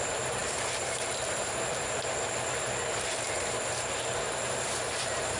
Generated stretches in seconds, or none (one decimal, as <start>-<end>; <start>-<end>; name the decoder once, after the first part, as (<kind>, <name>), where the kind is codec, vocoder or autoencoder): 0.0-5.4 (vocoder, BigVGAN v2)